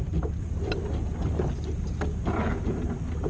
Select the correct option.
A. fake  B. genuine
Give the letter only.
B